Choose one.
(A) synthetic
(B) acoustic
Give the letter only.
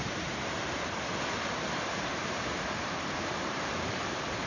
A